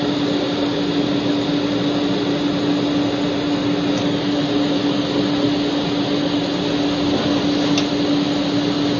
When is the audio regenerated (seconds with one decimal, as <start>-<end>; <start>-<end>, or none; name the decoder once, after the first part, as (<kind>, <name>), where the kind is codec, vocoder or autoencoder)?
none